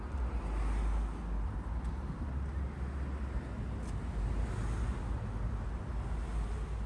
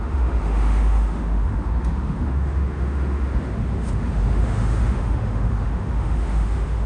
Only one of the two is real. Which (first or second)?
first